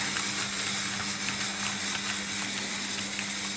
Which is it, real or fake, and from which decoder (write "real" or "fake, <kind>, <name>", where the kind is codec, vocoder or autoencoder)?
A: real